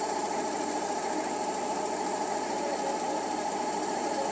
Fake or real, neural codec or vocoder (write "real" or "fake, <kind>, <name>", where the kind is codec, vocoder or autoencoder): real